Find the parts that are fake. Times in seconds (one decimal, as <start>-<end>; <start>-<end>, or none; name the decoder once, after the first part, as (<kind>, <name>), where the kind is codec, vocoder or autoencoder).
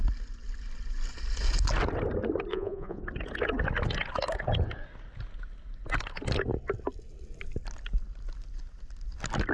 2.5-3.0 (vocoder, Vocos)